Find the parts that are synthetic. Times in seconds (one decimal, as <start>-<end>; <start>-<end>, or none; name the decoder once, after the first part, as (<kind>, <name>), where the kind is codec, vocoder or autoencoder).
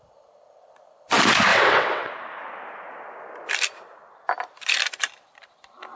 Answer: 1.5-2.1 (vocoder, WaveNeXt)